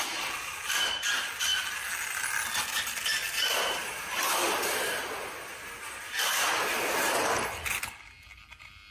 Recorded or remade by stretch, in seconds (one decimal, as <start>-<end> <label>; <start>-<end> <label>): 0.0-8.9 recorded